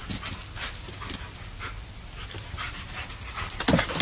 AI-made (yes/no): no